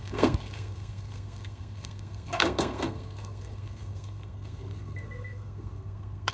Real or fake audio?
fake